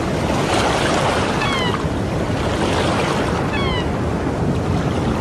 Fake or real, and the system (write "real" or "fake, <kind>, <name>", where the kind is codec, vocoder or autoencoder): real